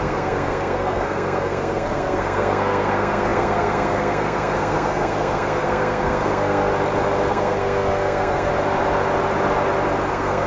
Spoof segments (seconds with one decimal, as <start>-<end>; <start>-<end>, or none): 0.0-6.7; 7.3-8.5; 10.1-10.5